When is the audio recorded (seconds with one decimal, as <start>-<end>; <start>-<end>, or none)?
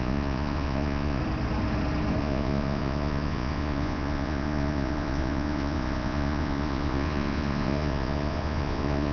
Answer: 1.2-2.2